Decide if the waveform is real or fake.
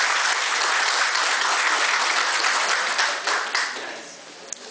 real